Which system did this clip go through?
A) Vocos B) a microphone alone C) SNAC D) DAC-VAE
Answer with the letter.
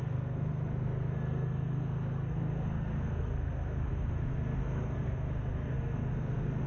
C